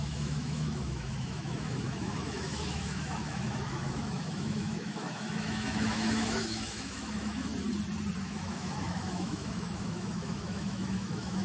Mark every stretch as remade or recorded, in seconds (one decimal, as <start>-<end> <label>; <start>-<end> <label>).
0.0-7.5 remade; 7.5-8.2 recorded; 8.2-11.4 remade